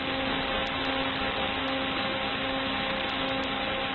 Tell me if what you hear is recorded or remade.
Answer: recorded